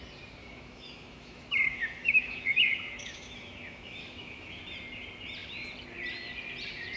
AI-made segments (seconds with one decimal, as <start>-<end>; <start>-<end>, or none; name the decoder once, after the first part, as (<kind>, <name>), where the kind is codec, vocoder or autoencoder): 0.4-4.6 (autoencoder, DAC-VAE)